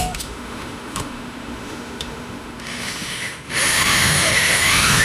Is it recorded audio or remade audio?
remade